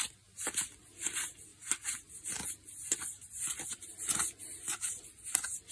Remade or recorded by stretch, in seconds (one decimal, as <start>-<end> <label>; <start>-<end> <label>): 0.0-5.7 recorded

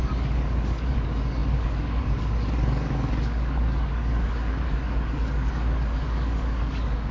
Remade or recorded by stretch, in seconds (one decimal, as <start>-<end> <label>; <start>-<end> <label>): 0.0-7.1 remade

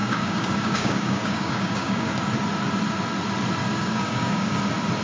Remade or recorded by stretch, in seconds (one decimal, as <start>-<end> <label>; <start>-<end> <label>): 0.0-2.3 remade; 2.3-3.6 recorded; 3.6-4.6 remade; 4.6-5.0 recorded

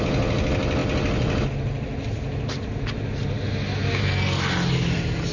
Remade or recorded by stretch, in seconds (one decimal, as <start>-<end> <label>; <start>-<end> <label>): 0.0-5.3 recorded

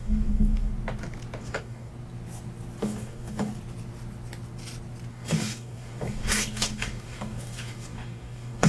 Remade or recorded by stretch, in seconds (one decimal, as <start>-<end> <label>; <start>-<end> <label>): 0.0-0.7 remade; 0.7-1.4 recorded; 1.4-1.9 remade; 1.9-2.8 recorded; 2.8-3.5 remade; 3.5-5.1 recorded; 5.1-8.7 remade